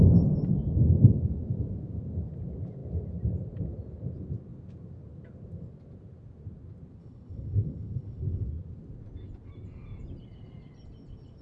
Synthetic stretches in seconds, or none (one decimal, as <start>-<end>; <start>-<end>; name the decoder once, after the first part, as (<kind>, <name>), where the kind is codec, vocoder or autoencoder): 7.0-8.5 (codec, HILCodec)